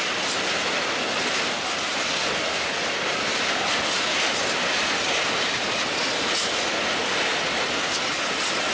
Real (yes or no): yes